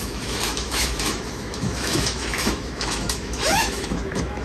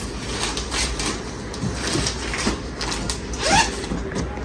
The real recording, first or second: second